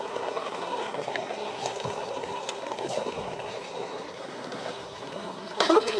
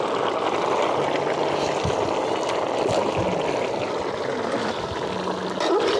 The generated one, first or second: first